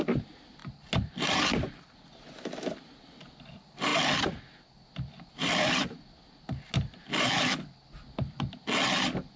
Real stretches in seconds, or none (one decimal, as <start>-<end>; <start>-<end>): 0.0-9.4